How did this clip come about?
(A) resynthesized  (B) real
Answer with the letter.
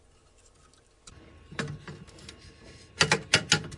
B